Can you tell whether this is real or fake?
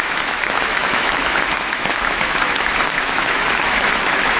fake